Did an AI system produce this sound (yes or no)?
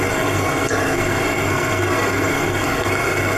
yes